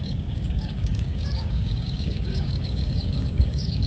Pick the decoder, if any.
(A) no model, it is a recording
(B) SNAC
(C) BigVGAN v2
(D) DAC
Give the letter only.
D